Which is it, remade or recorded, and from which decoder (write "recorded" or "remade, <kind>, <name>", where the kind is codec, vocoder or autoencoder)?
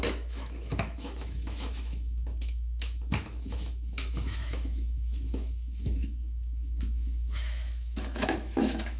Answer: remade, autoencoder, DAC-VAE